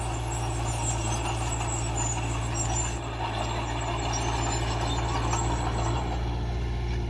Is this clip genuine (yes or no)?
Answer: yes